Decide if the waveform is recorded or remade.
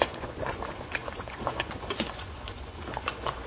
remade